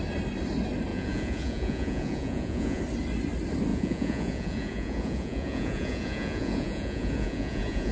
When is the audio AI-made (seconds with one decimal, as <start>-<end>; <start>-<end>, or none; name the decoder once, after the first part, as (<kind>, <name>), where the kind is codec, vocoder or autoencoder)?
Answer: 0.9-2.8 (vocoder, Vocos); 3.7-7.9